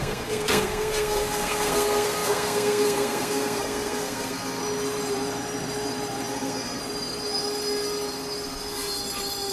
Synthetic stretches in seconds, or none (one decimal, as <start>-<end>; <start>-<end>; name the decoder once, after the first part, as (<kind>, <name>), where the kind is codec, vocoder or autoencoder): 0.0-4.6 (codec, SNAC); 6.3-6.8